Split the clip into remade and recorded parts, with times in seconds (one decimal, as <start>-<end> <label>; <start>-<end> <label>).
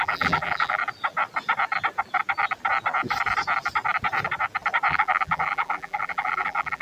0.0-0.8 remade; 0.8-4.9 recorded; 4.9-6.8 remade